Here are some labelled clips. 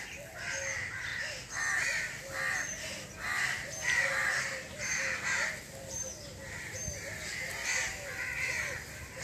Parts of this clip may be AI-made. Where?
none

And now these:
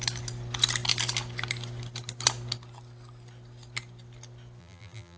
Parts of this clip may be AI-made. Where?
4.6-5.2 (vocoder, BigVGAN v2)

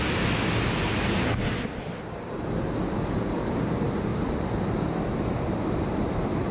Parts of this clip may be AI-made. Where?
4.1-6.5 (vocoder, BigVGAN v2)

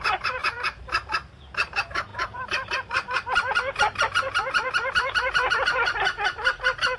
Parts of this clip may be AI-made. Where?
0.0-7.0 (vocoder, BigVGAN v2)

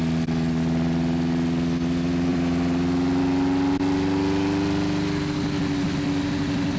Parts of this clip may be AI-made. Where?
2.3-3.2 (vocoder, BigVGAN v2)

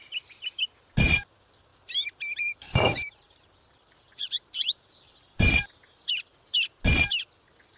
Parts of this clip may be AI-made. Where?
1.7-5.8 (vocoder, BigVGAN v2)

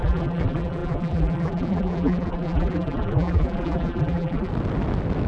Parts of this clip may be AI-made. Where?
0.0-4.5 (vocoder, BigVGAN v2)